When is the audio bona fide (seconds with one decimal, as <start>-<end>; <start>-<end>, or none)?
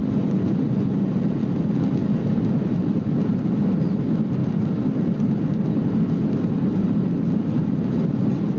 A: 1.1-8.6